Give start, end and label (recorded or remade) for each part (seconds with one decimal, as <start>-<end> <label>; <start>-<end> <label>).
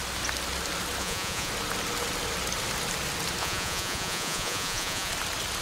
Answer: 0.0-1.0 recorded; 1.0-1.5 remade; 1.5-3.4 recorded; 3.4-5.1 remade; 5.1-5.6 recorded